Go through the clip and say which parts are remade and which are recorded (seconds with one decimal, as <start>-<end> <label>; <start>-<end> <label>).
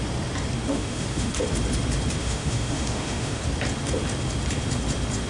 0.0-0.7 recorded; 0.7-1.3 remade; 1.3-2.2 recorded; 2.2-3.4 remade; 3.4-5.3 recorded